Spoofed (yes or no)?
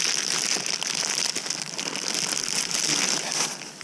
no